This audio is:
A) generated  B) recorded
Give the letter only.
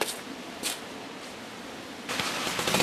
B